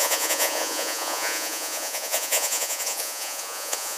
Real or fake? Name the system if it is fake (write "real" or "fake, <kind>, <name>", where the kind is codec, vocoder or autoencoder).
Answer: fake, vocoder, Vocos